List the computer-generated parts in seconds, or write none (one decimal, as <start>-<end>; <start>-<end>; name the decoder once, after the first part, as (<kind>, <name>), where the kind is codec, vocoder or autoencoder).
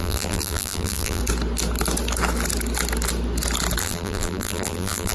0.0-1.2 (vocoder, BigVGAN v2); 3.8-5.1